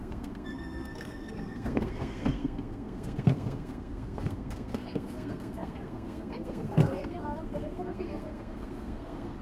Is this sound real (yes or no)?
no